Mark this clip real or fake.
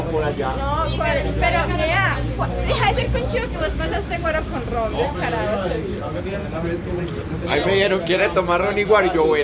real